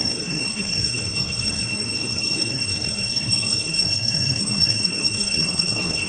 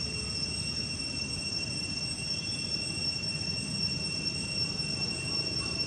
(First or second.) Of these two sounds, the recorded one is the second